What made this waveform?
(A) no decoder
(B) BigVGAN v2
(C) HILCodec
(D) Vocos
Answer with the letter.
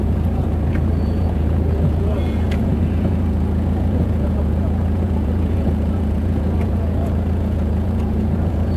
D